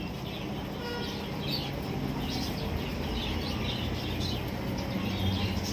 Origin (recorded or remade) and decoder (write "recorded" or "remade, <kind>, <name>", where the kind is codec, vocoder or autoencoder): recorded